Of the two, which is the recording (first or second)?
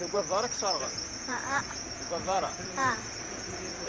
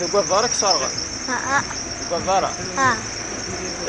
second